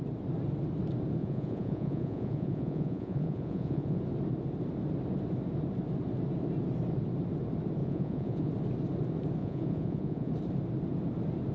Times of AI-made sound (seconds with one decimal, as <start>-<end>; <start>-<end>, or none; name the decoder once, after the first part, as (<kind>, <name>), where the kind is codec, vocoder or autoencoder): 1.2-4.0 (vocoder, Vocos); 7.8-8.5; 9.4-10.3